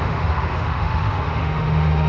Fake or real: fake